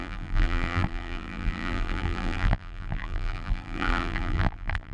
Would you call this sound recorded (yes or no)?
no